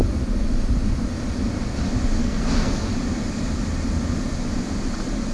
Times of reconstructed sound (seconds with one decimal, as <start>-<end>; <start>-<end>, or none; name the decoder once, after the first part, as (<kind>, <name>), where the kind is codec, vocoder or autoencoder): 2.2-2.9 (codec, SNAC)